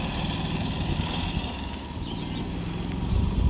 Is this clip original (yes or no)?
yes